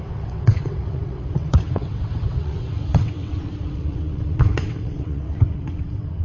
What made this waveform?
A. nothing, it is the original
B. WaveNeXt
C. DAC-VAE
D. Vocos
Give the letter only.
B